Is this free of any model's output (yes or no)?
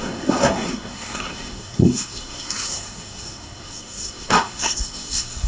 no